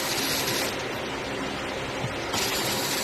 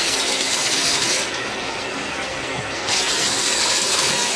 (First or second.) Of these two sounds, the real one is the first